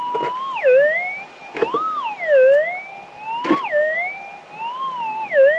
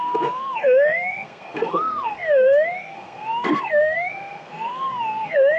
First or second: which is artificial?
second